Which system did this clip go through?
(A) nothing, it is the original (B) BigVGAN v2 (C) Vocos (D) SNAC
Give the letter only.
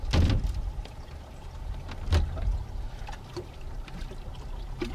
A